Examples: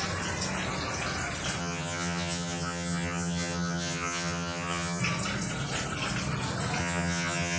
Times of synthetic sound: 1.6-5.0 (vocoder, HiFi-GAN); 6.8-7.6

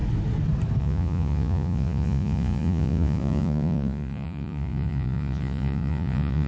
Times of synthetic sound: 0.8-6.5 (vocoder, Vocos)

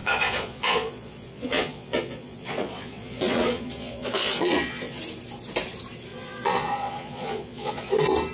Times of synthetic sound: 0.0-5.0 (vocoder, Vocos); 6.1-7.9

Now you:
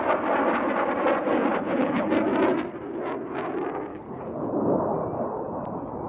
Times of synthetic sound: 1.5-2.1 (codec, HILCodec); 3.9-4.5

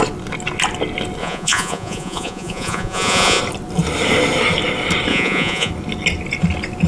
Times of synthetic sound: 1.2-3.4 (vocoder, Vocos); 5.1-5.7